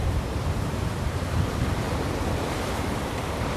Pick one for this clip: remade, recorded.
remade